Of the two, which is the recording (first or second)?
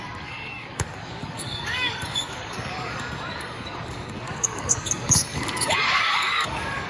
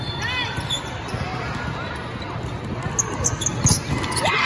second